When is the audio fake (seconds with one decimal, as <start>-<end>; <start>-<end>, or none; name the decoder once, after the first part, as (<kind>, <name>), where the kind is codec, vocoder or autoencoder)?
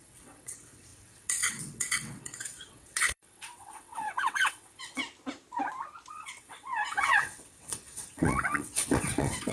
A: 0.0-5.0 (vocoder, WaveNeXt); 6.1-9.5